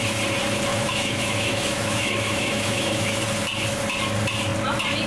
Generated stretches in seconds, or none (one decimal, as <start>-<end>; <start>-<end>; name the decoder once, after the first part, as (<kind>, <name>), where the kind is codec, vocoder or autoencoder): 0.7-3.2 (autoencoder, DAC-VAE)